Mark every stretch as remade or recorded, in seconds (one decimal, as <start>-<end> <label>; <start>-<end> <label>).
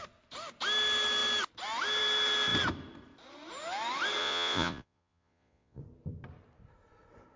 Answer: 0.0-4.2 recorded; 4.2-5.8 remade; 5.8-7.4 recorded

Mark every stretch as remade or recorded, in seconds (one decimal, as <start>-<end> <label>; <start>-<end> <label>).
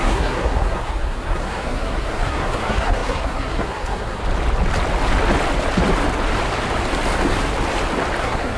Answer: 0.0-4.2 remade; 4.2-8.2 recorded; 8.2-8.6 remade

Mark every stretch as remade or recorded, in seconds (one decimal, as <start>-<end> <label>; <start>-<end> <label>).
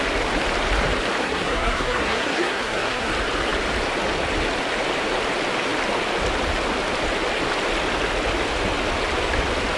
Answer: 0.0-1.2 recorded; 1.2-3.1 remade; 3.1-9.8 recorded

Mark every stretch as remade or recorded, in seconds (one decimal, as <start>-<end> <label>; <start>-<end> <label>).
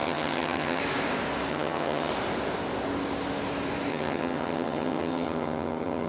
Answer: 0.0-0.8 remade; 0.8-1.5 recorded; 1.5-2.1 remade; 2.1-3.9 recorded; 3.9-6.1 remade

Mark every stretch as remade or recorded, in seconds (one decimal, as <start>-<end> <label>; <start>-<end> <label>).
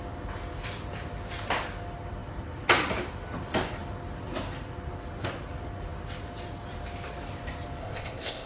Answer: 0.0-7.8 recorded; 7.8-8.5 remade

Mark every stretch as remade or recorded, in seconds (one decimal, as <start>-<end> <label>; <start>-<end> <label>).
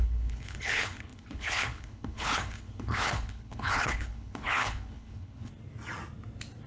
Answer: 0.0-5.5 remade; 5.5-6.7 recorded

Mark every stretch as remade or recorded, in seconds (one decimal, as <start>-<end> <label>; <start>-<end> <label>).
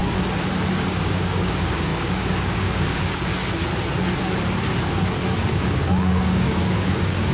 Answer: 0.0-0.7 recorded; 0.7-3.3 remade; 3.3-5.5 recorded; 5.5-7.3 remade